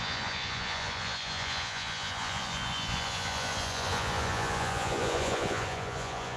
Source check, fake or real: fake